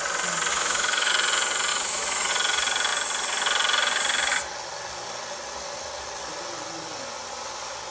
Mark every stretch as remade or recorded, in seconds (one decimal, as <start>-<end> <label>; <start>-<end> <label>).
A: 0.0-0.5 recorded; 0.5-1.1 remade; 1.1-1.7 recorded; 1.7-2.3 remade; 2.3-7.9 recorded